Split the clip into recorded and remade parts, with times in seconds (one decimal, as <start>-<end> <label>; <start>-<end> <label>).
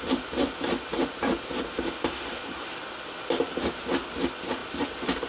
0.0-4.6 recorded; 4.6-5.3 remade